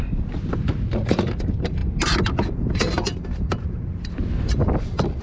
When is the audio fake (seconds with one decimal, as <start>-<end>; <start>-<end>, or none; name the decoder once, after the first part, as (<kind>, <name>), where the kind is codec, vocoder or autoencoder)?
none